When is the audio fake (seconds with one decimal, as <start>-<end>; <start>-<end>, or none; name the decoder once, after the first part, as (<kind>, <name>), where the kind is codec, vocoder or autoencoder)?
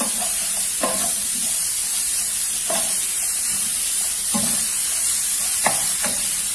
0.0-1.8 (vocoder, BigVGAN v2); 5.7-6.5